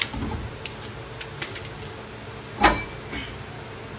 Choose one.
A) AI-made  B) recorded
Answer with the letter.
B